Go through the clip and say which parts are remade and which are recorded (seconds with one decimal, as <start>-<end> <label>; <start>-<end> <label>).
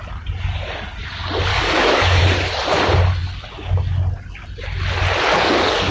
0.0-1.5 recorded; 1.5-2.2 remade; 2.2-5.3 recorded; 5.3-5.9 remade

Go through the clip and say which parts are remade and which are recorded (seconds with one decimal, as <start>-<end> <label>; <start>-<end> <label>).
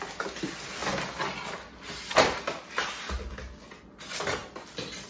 0.0-5.1 recorded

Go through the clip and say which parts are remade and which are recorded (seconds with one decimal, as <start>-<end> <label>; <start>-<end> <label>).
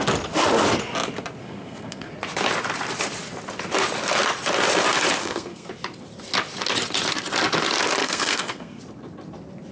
0.0-1.4 recorded; 1.4-2.1 remade; 2.1-5.2 recorded; 5.2-5.7 remade; 5.7-8.0 recorded; 8.0-8.8 remade; 8.8-9.7 recorded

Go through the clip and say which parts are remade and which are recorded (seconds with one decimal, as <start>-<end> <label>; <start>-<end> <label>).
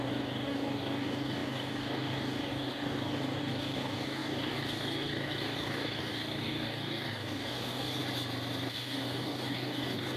0.0-8.0 remade; 8.0-8.7 recorded; 8.7-10.2 remade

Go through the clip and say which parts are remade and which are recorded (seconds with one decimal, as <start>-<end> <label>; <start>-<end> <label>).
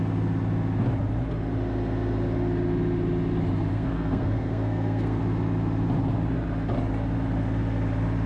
0.0-3.7 recorded; 3.7-5.2 remade; 5.2-8.3 recorded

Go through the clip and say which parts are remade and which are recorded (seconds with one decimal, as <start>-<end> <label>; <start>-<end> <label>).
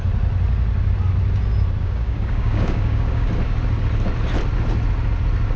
0.0-1.8 recorded; 1.8-3.3 remade; 3.3-5.6 recorded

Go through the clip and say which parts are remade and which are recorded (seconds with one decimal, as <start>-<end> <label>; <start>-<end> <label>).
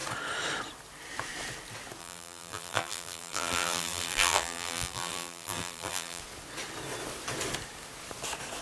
0.0-2.0 recorded; 2.0-6.2 remade; 6.2-8.6 recorded